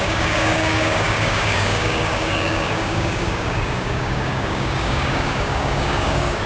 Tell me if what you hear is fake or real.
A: fake